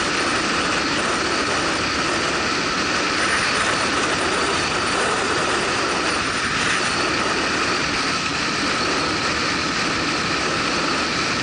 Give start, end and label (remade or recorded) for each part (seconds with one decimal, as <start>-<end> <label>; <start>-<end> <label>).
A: 0.0-3.4 recorded; 3.4-6.9 remade; 6.9-11.4 recorded